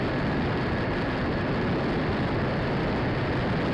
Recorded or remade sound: recorded